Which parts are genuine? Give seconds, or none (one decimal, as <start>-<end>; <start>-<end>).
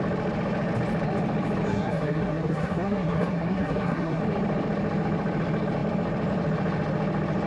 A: 0.0-1.7; 4.2-7.5